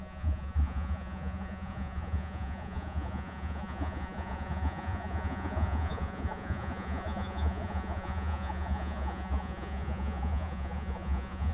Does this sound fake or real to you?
fake